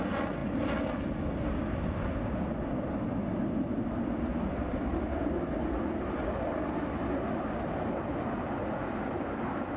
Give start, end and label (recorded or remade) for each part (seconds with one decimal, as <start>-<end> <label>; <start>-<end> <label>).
0.0-4.3 recorded; 4.3-6.4 remade; 6.4-9.8 recorded